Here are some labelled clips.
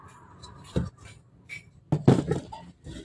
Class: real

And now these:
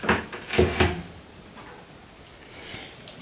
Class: real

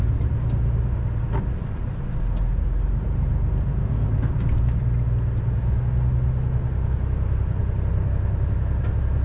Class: real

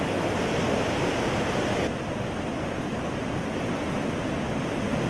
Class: real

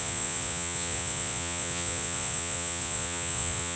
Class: fake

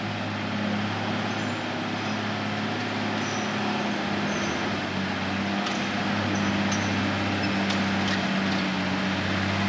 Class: real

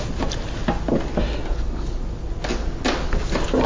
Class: real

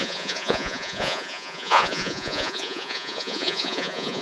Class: fake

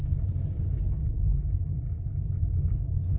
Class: real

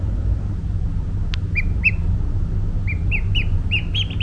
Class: real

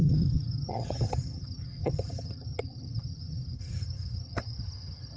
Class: fake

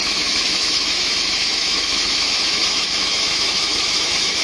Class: fake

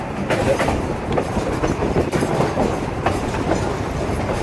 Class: fake